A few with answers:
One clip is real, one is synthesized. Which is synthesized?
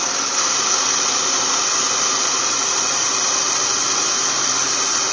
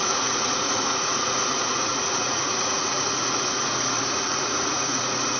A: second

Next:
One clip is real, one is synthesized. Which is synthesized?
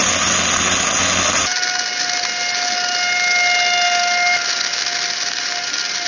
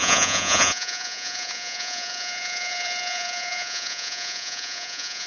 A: second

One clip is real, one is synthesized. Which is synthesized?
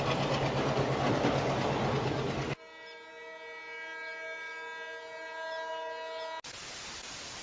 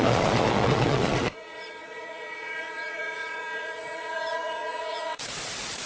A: second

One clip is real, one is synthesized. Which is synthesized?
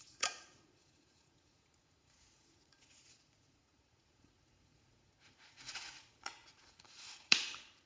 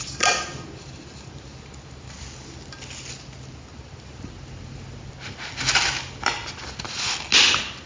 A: first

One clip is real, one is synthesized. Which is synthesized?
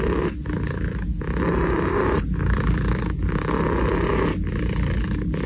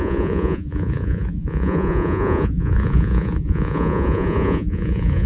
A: second